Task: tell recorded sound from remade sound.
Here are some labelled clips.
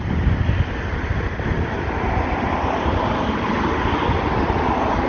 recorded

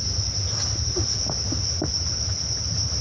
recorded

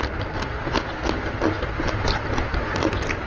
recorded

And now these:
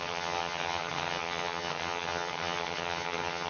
remade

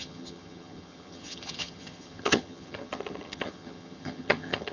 remade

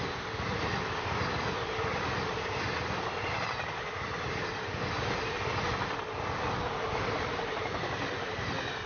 recorded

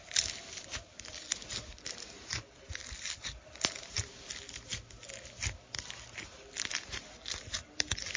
recorded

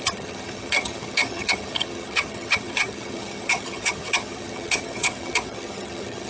remade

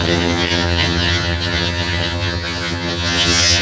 remade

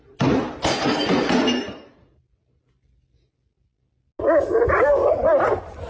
recorded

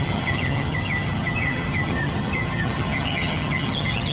remade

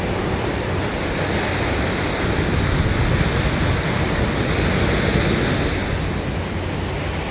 recorded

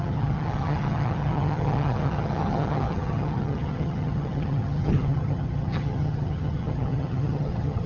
remade